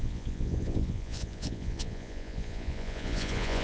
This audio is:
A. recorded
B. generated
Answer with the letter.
B